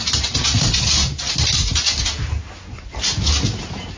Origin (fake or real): real